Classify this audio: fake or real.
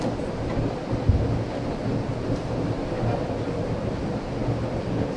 real